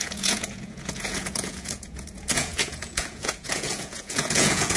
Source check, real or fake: fake